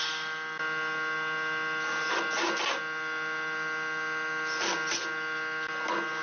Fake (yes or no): no